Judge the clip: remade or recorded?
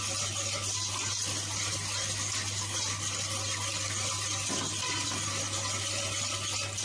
recorded